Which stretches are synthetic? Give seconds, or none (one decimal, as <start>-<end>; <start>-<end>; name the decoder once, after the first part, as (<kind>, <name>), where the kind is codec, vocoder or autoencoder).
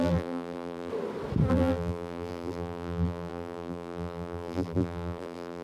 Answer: 0.0-0.9 (vocoder, BigVGAN v2); 1.5-5.6